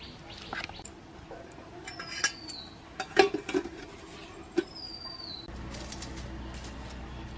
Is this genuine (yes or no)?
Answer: yes